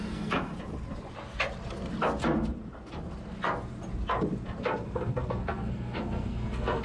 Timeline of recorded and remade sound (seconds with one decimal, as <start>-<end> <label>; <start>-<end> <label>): 0.0-0.5 remade; 0.5-4.6 recorded; 4.6-6.8 remade